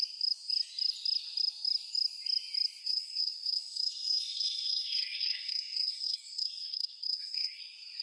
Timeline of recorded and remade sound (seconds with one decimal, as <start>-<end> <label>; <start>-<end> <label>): 0.0-2.8 recorded; 2.8-7.6 remade; 7.6-8.0 recorded